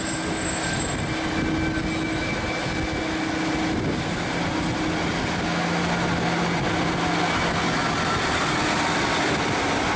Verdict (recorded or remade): recorded